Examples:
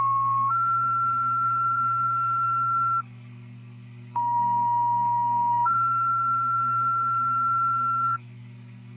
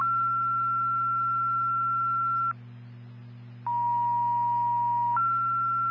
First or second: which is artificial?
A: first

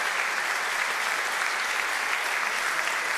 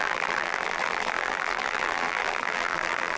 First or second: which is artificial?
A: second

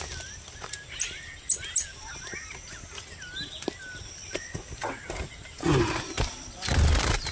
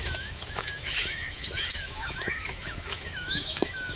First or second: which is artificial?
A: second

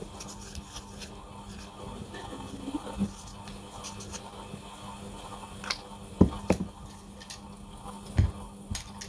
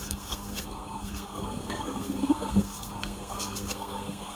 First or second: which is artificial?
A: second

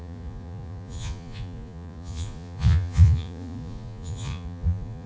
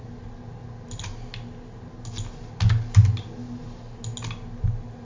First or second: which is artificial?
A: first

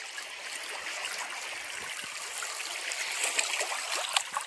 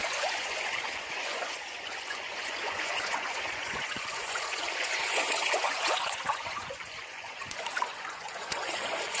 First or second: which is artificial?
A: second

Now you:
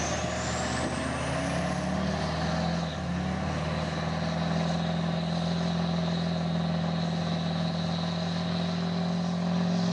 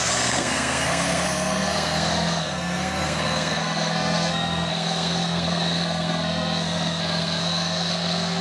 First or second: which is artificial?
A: second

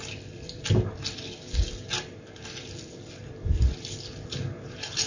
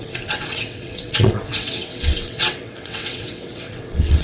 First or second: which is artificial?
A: second